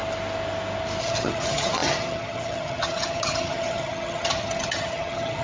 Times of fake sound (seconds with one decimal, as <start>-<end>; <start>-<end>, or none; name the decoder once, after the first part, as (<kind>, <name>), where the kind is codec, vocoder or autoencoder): 1.0-5.4 (vocoder, HiFi-GAN)

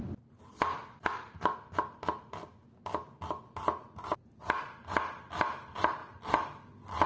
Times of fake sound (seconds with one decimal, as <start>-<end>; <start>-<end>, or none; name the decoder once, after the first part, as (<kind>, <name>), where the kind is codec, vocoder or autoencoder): none